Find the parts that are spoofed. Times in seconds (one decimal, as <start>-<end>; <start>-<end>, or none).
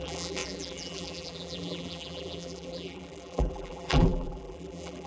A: 0.0-5.1